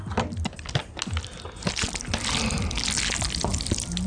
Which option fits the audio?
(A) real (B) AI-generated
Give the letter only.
A